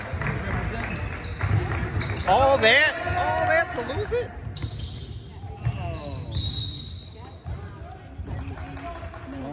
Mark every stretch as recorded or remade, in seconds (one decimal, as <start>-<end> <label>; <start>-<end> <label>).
0.0-9.5 recorded